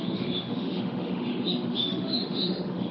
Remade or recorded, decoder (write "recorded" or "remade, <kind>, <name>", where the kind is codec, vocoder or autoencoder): remade, autoencoder, DAC-VAE